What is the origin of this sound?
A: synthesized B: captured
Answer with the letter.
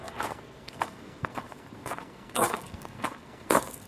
A